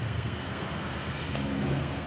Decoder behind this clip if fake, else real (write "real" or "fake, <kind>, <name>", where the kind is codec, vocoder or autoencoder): fake, codec, SNAC